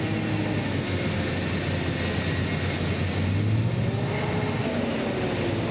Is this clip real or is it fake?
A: real